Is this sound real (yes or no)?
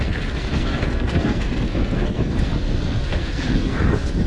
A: no